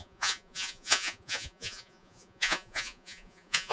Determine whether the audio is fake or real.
fake